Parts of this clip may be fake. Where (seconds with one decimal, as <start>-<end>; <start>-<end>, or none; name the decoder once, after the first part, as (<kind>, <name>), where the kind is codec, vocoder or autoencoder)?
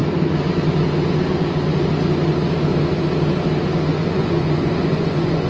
3.9-5.5 (vocoder, Vocos)